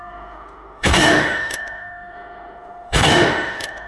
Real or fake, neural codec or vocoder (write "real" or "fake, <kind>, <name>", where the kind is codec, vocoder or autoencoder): fake, autoencoder, DAC-VAE